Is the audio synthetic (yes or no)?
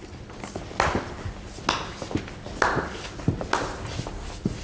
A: no